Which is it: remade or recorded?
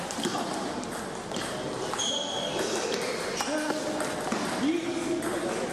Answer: recorded